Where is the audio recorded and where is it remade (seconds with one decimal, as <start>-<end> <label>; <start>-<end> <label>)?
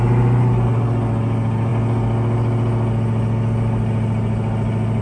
0.0-5.0 recorded